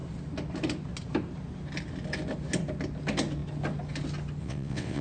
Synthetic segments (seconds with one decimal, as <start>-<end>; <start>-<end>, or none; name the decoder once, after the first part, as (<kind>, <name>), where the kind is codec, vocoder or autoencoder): 4.4-5.0 (vocoder, WaveNeXt)